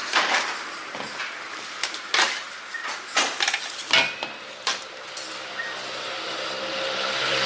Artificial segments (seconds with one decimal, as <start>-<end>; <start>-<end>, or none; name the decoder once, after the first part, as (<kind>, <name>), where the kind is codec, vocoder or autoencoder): 0.0-1.2 (vocoder, BigVGAN v2); 1.8-2.3